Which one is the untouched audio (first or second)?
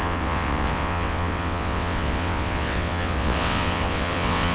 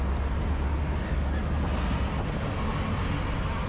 second